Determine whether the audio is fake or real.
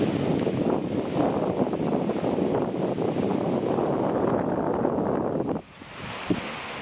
real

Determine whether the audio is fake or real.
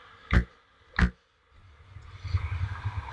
real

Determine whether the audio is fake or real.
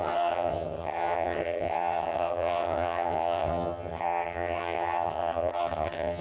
fake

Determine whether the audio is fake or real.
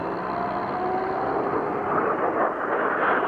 real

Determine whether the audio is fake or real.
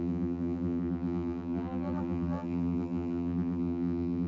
fake